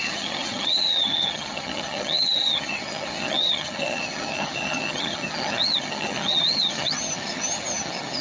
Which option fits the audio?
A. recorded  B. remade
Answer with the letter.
B